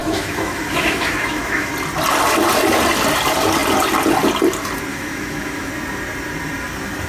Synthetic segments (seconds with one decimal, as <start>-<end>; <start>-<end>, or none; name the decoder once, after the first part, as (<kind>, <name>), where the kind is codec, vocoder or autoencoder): 0.0-1.7 (autoencoder, DAC-VAE); 4.9-5.7